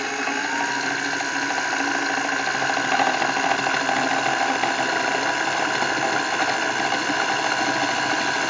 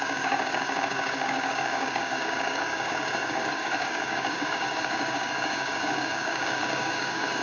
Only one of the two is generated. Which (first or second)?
second